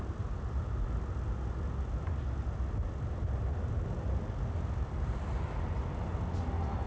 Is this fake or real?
real